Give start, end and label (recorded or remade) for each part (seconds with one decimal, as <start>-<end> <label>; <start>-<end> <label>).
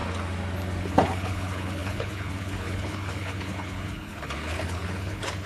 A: 0.0-0.8 recorded; 0.8-5.5 remade